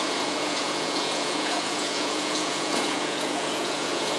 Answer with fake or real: fake